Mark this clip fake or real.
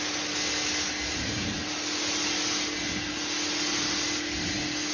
real